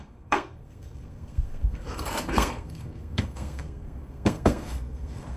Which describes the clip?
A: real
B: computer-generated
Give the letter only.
B